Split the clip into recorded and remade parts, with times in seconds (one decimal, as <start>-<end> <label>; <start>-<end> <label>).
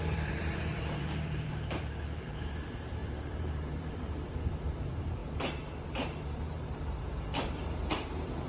0.0-5.2 remade; 5.2-5.8 recorded; 5.8-8.5 remade